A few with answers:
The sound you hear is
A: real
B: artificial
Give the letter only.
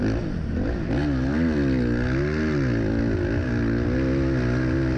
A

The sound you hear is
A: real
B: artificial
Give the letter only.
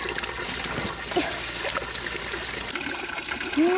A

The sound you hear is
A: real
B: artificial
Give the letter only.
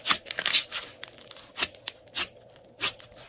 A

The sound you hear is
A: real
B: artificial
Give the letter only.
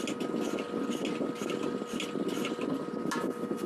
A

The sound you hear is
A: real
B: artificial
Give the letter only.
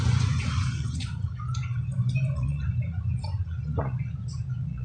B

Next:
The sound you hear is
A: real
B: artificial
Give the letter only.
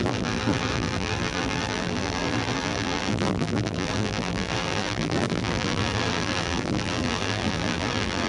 B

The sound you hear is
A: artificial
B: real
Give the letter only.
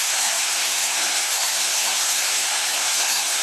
A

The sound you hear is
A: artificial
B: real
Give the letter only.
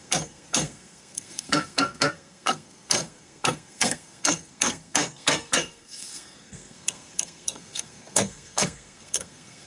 A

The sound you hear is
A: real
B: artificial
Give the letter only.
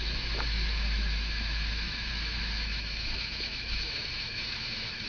B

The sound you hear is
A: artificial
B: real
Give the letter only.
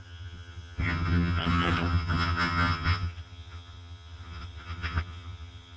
A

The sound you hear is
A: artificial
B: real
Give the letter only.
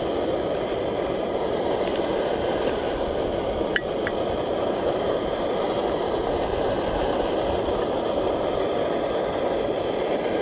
B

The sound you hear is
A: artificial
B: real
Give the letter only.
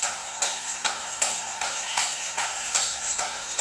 A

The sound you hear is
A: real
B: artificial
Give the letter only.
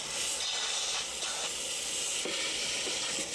A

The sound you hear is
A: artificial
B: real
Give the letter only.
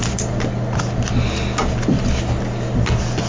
B